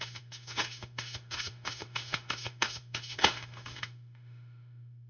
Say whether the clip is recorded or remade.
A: remade